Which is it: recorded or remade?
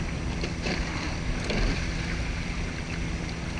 recorded